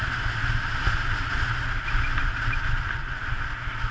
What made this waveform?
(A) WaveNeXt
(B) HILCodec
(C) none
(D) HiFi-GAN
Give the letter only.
C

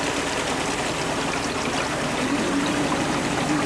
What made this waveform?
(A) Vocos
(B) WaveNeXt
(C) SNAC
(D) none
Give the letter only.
D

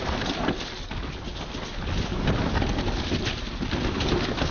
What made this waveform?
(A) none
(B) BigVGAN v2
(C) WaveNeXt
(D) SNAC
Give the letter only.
A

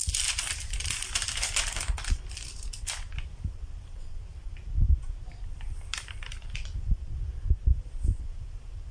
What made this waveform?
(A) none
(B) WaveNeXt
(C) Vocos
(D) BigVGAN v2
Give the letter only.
A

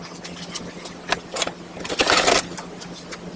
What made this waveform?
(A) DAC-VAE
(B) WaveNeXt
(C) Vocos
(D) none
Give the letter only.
D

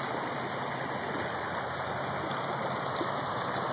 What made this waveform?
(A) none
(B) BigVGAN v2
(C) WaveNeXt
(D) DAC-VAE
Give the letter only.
A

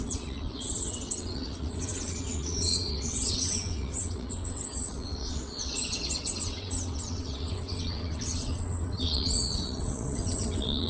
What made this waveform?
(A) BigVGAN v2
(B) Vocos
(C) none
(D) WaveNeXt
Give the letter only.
D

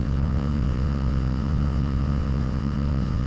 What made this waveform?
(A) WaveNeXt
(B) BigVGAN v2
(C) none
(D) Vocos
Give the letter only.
A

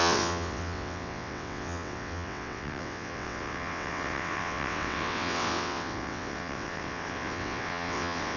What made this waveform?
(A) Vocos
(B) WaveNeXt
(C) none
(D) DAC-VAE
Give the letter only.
B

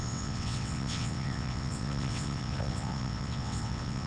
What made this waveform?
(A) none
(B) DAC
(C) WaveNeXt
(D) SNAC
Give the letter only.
C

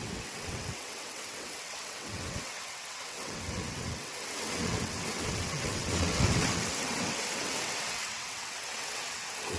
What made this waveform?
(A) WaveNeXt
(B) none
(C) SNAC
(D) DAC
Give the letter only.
A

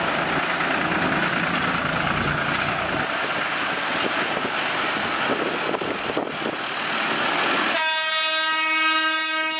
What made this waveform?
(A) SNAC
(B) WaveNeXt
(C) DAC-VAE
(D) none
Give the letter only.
D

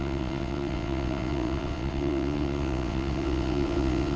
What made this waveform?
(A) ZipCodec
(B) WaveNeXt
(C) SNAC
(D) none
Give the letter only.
B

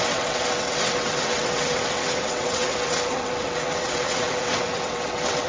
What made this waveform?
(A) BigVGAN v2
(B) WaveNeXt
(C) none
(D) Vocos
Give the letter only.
B